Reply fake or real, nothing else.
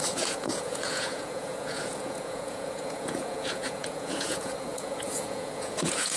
fake